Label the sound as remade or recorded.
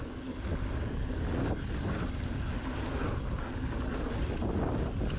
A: recorded